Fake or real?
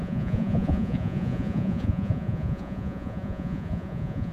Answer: fake